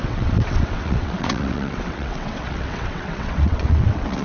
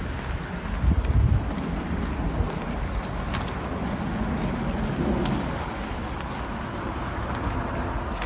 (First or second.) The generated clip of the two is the first